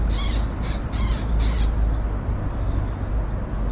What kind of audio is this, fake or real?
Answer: real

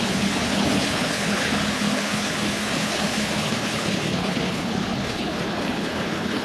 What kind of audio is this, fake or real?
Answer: fake